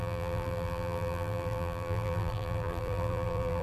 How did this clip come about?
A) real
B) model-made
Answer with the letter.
B